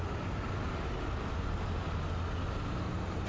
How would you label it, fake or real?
real